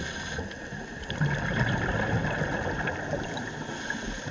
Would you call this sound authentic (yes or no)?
yes